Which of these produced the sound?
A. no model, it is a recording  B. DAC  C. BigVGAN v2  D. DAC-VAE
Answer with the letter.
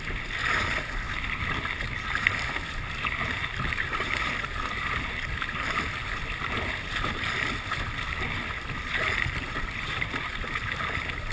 A